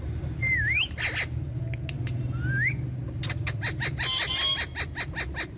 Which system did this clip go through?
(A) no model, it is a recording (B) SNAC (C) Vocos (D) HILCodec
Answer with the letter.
A